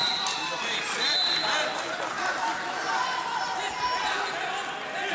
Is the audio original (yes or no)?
yes